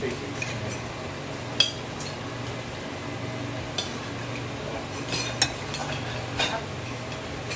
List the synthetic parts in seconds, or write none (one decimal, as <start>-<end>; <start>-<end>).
none